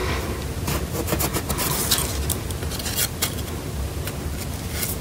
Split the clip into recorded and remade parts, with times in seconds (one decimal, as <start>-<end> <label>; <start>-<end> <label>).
0.0-5.0 recorded